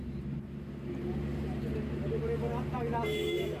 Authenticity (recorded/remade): recorded